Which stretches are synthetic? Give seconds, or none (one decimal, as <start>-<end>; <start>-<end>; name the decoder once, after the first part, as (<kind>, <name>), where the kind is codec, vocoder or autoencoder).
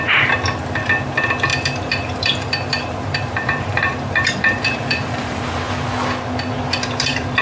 1.5-5.5 (vocoder, BigVGAN v2)